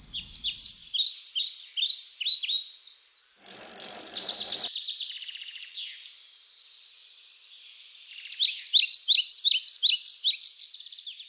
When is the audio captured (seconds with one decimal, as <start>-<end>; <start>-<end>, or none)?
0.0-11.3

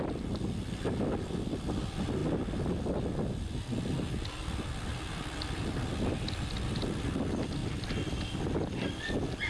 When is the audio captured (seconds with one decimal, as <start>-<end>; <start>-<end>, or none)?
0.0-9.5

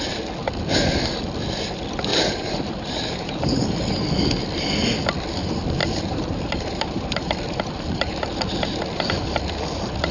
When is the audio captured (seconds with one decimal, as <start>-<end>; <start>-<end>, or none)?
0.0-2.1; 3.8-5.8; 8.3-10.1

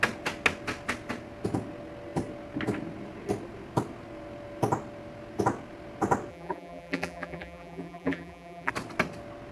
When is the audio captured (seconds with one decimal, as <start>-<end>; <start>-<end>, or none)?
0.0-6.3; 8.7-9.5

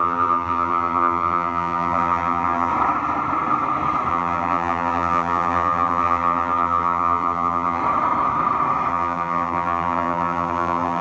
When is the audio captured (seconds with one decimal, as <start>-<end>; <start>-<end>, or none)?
2.7-4.1; 7.8-8.9